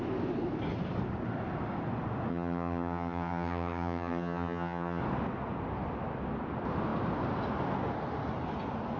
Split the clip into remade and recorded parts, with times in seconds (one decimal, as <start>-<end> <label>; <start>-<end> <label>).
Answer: 0.0-2.3 recorded; 2.3-5.0 remade; 5.0-9.0 recorded